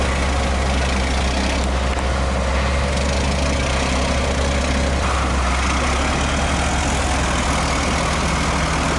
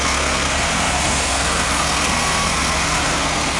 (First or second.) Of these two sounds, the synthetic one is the second